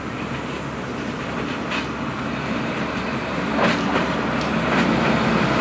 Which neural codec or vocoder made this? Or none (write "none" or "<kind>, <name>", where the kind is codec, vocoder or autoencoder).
none